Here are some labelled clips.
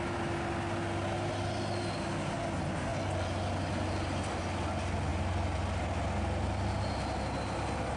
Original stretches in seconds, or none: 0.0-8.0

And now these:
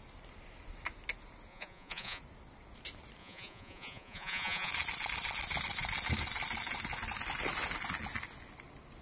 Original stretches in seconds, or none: 0.0-1.5; 2.2-3.2; 4.7-9.0

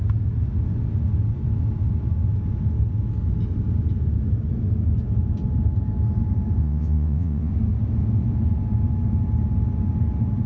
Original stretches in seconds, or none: 0.0-6.6; 7.5-10.5